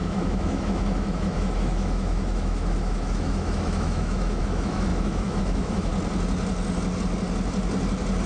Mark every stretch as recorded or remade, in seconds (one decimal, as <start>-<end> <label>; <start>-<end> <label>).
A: 0.0-5.9 remade; 5.9-8.3 recorded